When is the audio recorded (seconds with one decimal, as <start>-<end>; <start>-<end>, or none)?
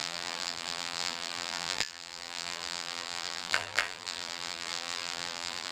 none